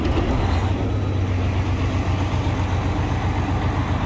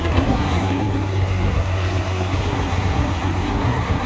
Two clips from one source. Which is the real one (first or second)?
first